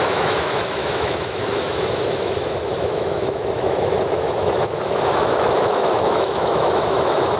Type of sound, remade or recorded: remade